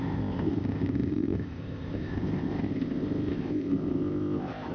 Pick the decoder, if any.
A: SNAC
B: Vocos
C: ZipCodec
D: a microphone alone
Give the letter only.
C